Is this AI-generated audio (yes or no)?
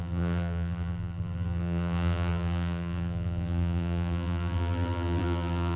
yes